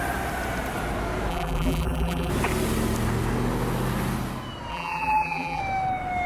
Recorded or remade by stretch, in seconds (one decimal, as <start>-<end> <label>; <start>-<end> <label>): 0.0-1.3 recorded; 1.3-2.3 remade; 2.3-4.7 recorded; 4.7-5.6 remade; 5.6-6.3 recorded